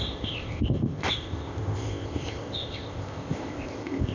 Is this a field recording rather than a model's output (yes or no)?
no